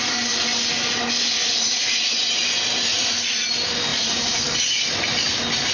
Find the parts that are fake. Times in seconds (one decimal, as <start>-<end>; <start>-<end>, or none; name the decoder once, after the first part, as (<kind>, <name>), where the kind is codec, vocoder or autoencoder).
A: 1.4-2.3 (vocoder, Vocos); 2.9-3.5; 3.9-4.4